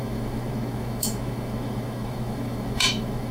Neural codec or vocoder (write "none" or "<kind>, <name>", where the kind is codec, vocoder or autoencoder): autoencoder, DAC-VAE